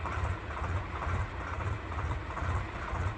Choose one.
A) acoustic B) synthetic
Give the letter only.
B